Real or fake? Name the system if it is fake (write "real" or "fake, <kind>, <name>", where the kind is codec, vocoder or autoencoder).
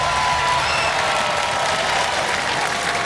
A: real